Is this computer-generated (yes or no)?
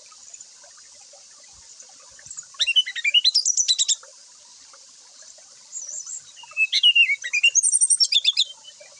yes